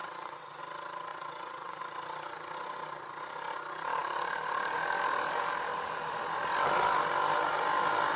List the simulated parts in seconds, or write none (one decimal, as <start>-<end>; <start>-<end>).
0.0-0.6; 1.1-1.8

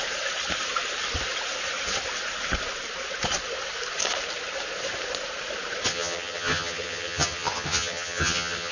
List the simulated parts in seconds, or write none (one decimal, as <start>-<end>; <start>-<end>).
5.9-8.7